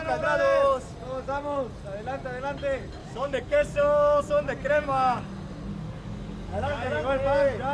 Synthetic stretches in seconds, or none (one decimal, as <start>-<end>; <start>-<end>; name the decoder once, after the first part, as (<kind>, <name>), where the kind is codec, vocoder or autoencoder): 3.0-4.2 (codec, DAC); 5.7-6.9